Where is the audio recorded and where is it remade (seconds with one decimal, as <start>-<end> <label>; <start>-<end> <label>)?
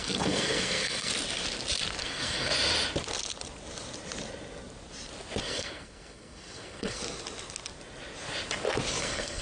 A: 0.0-1.1 remade; 1.1-2.0 recorded; 2.0-2.5 remade; 2.5-5.4 recorded; 5.4-7.0 remade; 7.0-9.0 recorded; 9.0-9.4 remade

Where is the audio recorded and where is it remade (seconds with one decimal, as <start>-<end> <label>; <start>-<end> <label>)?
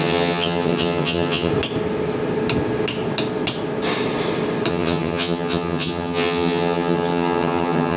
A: 0.0-1.5 remade; 1.5-4.7 recorded; 4.7-8.0 remade